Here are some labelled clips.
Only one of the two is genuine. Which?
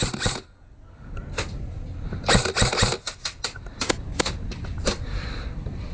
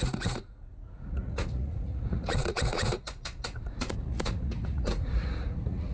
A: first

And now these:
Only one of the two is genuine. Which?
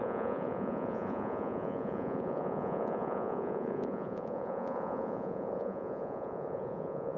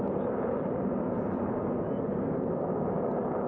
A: second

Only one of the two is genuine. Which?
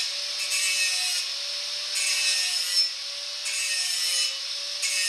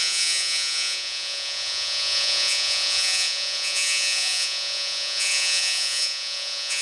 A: first